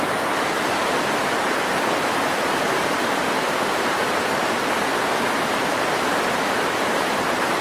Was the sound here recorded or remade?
remade